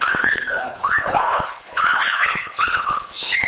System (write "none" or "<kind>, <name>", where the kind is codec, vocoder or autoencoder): codec, HILCodec